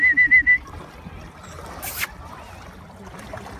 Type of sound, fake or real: real